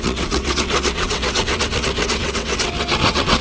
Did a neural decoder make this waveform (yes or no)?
yes